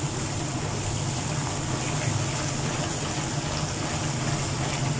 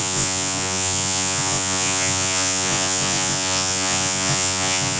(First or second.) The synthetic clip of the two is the second